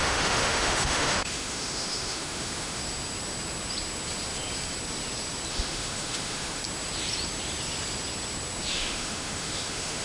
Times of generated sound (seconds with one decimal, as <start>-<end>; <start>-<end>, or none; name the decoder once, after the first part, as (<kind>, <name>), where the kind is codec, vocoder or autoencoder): 0.0-2.8 (autoencoder, DAC-VAE); 5.5-6.6; 8.7-10.0